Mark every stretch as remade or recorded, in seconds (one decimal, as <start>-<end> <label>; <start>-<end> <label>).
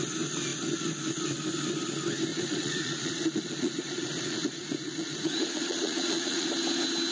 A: 0.0-2.3 recorded; 2.3-6.5 remade; 6.5-7.1 recorded